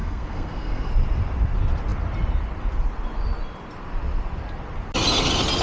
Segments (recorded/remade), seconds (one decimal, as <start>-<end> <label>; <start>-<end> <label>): 0.0-0.9 remade; 0.9-5.6 recorded